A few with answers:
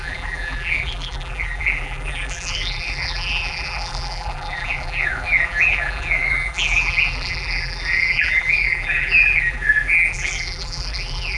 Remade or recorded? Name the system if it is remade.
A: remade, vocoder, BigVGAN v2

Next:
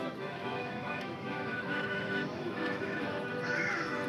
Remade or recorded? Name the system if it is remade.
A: remade, autoencoder, DAC-VAE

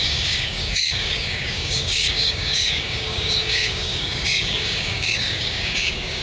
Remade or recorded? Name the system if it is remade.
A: remade, codec, DAC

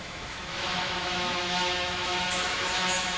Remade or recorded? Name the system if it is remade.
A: remade, autoencoder, DAC-VAE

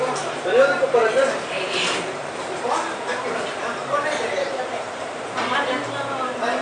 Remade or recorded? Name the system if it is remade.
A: remade, vocoder, BigVGAN v2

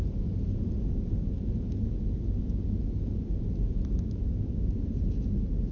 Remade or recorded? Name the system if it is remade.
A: recorded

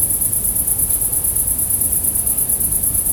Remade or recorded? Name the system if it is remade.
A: recorded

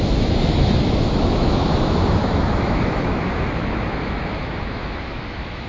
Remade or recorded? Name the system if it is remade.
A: remade, autoencoder, DAC-VAE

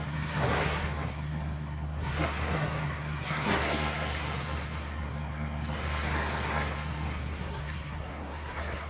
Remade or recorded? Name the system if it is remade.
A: remade, codec, SNAC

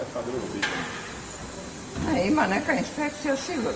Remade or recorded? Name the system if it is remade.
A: recorded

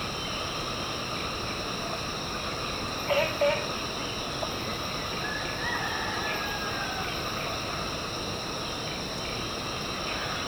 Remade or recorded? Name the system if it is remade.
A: recorded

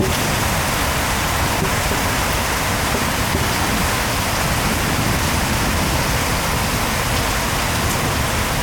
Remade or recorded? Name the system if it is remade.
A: recorded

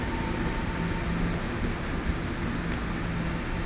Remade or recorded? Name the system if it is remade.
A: recorded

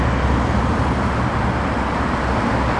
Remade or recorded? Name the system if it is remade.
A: recorded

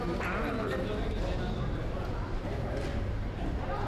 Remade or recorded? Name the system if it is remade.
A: recorded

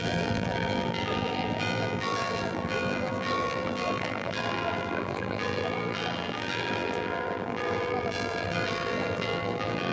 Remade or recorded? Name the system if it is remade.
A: remade, vocoder, BigVGAN v2